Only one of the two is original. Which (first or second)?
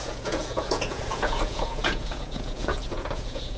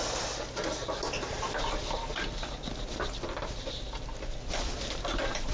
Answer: second